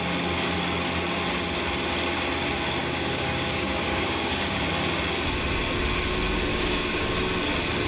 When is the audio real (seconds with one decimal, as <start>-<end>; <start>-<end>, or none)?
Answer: 0.0-2.8; 4.6-6.5; 7.1-7.9